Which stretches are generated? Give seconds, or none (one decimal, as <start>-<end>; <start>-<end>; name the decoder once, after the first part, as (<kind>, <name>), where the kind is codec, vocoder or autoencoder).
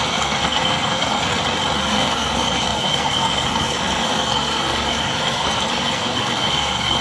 0.0-1.3 (codec, SNAC); 1.8-7.0